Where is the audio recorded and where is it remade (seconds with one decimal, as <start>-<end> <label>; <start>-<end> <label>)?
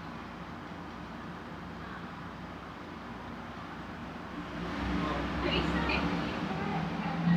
0.0-7.4 recorded